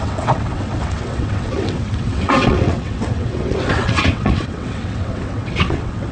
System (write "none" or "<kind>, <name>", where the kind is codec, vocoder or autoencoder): vocoder, WaveNeXt